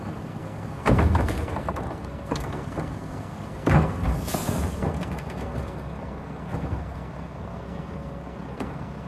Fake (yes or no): yes